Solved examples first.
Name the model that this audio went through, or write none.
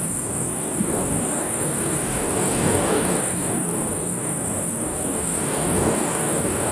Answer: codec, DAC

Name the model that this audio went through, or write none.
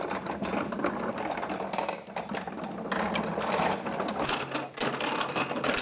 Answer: none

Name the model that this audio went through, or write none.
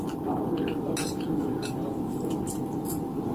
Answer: none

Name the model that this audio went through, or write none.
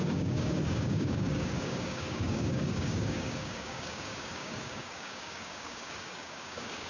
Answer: codec, DAC